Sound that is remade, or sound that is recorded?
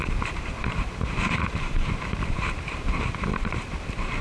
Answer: remade